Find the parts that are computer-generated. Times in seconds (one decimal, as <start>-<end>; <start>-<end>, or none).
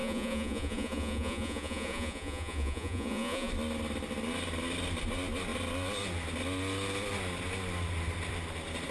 0.0-3.5